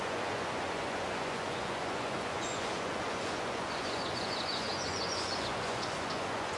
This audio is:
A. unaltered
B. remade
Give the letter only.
B